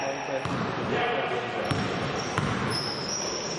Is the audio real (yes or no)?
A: yes